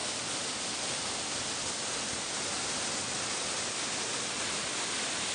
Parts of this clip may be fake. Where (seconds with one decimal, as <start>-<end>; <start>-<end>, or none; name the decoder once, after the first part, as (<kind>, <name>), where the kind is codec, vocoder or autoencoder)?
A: none